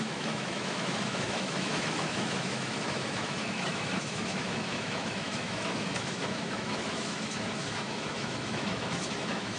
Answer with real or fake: fake